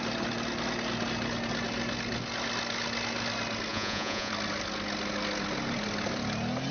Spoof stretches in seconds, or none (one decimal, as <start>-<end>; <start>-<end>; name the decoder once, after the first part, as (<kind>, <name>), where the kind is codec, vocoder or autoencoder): 3.7-4.3 (vocoder, Vocos)